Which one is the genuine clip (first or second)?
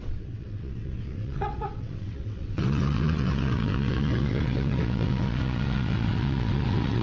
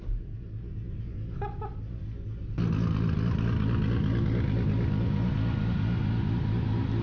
second